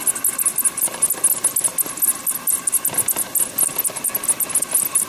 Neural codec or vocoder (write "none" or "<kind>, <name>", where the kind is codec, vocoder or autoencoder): none